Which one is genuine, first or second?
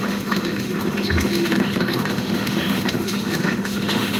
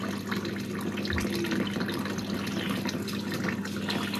second